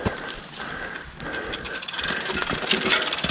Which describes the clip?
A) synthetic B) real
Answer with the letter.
B